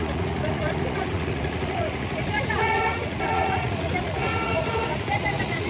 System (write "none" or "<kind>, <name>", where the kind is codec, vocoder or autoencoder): vocoder, Vocos